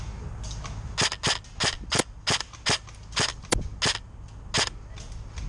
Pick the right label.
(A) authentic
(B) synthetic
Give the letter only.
A